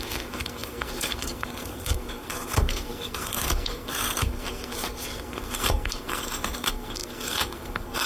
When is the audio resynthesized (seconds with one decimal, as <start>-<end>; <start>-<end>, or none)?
0.0-8.1